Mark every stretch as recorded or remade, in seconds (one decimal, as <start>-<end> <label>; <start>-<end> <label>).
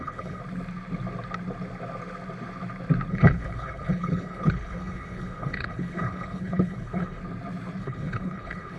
0.0-0.4 remade; 0.4-3.1 recorded; 3.1-7.2 remade; 7.2-7.8 recorded; 7.8-8.8 remade